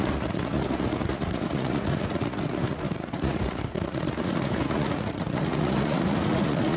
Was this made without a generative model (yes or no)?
no